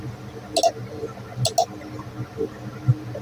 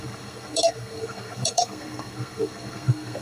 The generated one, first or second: second